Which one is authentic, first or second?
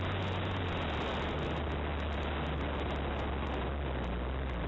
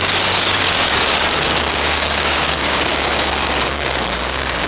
first